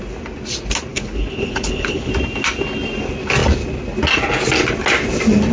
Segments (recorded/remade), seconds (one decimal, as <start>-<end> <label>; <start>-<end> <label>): 0.0-0.9 recorded; 0.9-2.1 remade; 2.1-5.5 recorded